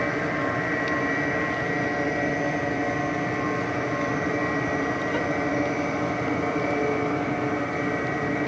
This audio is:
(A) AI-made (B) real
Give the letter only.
B